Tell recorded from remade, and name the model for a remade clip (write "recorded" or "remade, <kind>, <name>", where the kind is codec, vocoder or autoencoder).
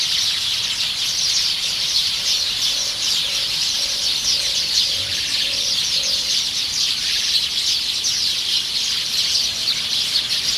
remade, vocoder, BigVGAN v2